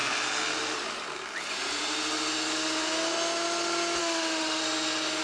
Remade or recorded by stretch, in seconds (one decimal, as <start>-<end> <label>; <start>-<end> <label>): 0.0-4.0 recorded; 4.0-4.6 remade; 4.6-5.2 recorded